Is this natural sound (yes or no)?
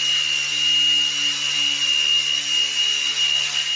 yes